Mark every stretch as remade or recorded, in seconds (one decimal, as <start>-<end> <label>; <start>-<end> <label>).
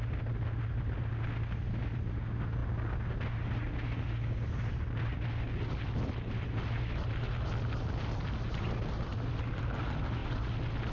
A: 0.0-10.9 recorded